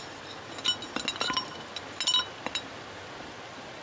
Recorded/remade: recorded